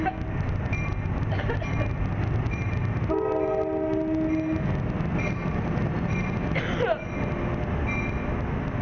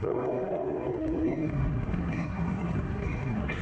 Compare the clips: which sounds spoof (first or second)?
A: second